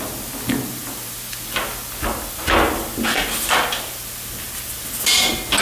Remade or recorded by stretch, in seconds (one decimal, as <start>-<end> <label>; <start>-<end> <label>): 0.0-5.6 recorded